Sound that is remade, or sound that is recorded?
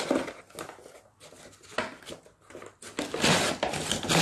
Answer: recorded